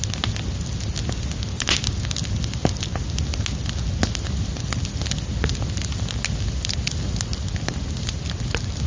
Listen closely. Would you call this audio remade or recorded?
recorded